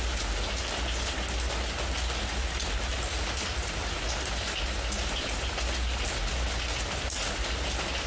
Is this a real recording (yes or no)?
yes